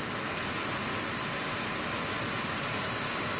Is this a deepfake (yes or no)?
no